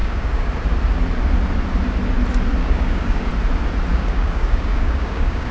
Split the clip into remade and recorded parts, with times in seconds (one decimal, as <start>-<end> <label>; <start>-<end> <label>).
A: 0.0-0.5 remade; 0.5-2.6 recorded; 2.6-3.3 remade; 3.3-3.9 recorded; 3.9-5.5 remade